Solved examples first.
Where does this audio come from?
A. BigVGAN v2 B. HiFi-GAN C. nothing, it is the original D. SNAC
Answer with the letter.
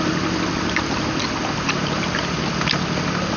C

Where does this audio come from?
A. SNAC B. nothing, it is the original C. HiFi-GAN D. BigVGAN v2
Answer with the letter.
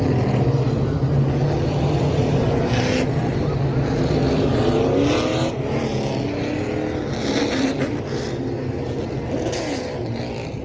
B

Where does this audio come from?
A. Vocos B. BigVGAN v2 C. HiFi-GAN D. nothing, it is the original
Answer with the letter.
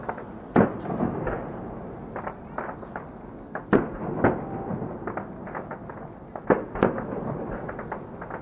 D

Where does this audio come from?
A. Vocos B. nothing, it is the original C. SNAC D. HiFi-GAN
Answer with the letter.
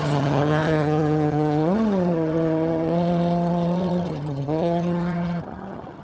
D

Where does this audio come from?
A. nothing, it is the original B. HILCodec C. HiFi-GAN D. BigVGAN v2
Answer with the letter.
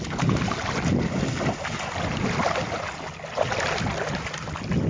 A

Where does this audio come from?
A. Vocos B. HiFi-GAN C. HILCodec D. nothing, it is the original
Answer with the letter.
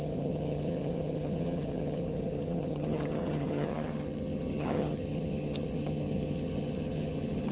B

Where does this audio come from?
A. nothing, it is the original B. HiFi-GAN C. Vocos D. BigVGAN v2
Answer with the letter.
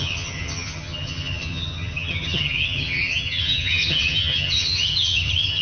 B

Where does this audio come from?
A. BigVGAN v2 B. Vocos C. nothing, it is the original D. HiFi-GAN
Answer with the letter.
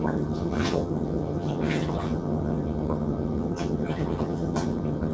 D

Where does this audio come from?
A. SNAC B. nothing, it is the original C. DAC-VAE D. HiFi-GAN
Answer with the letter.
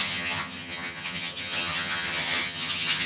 D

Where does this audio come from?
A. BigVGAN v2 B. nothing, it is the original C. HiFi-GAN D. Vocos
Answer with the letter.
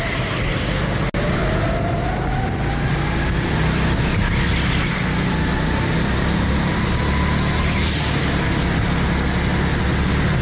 B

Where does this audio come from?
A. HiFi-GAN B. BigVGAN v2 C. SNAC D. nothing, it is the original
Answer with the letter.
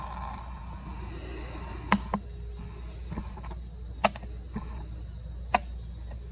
D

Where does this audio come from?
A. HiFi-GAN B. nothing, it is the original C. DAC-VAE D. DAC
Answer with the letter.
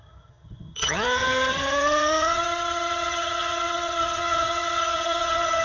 A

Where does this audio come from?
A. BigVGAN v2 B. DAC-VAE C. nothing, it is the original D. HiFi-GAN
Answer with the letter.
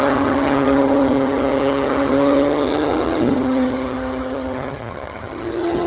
D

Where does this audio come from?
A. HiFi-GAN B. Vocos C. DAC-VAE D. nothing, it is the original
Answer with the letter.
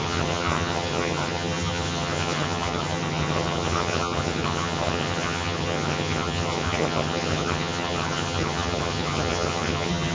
A